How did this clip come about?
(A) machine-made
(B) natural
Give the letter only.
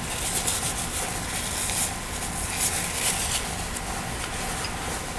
B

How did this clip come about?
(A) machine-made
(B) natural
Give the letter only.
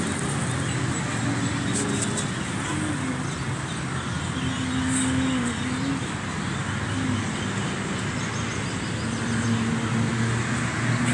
B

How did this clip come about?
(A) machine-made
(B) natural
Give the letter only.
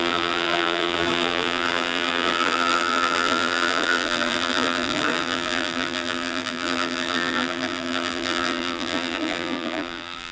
A